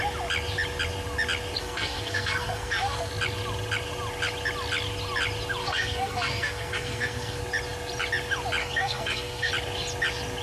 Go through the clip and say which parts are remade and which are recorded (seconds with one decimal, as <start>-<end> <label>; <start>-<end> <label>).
0.0-1.6 recorded; 1.6-3.1 remade; 3.1-5.6 recorded; 5.6-7.4 remade; 7.4-8.6 recorded; 8.6-9.5 remade; 9.5-10.4 recorded